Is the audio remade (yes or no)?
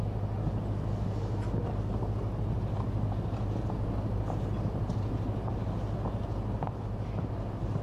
no